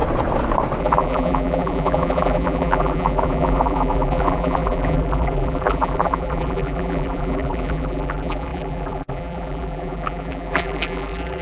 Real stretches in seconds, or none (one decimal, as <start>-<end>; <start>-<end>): 0.0-0.8